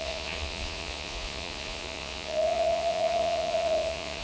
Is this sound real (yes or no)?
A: no